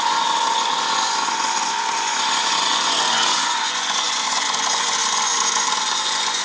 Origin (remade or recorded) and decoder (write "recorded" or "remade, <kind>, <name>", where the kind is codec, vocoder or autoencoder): remade, vocoder, Vocos